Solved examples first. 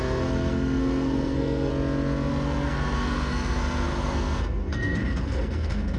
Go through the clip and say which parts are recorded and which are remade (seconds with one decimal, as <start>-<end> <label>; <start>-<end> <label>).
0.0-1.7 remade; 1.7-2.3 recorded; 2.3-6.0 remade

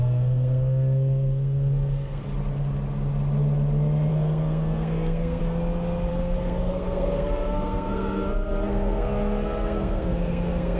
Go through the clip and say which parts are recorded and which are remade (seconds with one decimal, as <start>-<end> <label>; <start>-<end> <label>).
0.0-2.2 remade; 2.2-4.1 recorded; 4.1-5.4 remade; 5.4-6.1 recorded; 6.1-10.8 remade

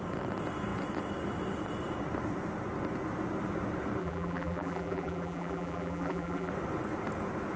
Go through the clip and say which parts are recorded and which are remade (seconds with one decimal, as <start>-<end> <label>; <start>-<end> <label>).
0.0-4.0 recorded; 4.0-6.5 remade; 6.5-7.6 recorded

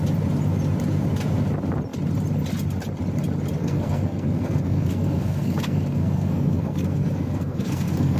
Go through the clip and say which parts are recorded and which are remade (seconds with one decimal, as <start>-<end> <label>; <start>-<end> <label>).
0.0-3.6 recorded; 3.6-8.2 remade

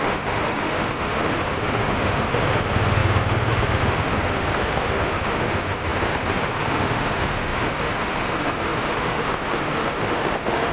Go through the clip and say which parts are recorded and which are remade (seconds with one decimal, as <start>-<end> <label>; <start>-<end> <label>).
0.0-10.7 remade